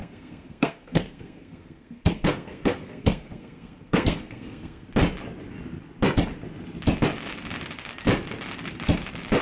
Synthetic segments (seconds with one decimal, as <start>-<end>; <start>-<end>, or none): 0.0-4.9